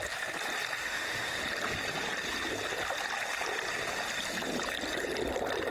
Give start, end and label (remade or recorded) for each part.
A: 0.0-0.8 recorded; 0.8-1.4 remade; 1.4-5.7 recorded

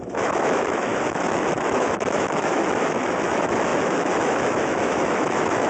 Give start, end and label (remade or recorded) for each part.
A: 0.0-5.7 remade

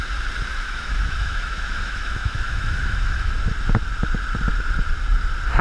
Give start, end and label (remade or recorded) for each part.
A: 0.0-0.5 recorded; 0.5-3.3 remade; 3.3-5.6 recorded

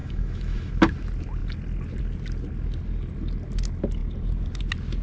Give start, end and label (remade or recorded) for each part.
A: 0.0-0.7 remade; 0.7-5.0 recorded

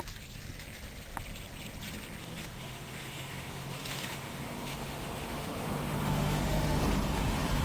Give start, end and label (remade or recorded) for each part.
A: 0.0-2.2 recorded; 2.2-6.8 remade; 6.8-7.6 recorded